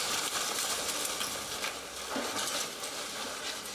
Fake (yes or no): no